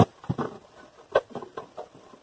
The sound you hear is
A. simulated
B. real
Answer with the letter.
B